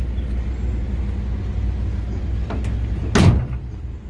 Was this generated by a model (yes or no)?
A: no